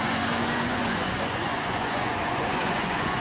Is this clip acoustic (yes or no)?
no